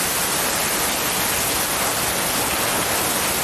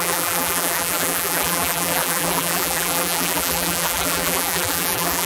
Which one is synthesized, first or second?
second